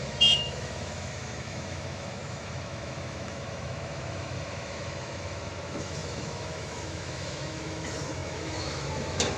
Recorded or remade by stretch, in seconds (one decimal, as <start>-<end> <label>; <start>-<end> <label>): 0.0-9.4 remade